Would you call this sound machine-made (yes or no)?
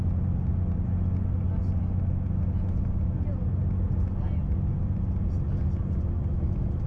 no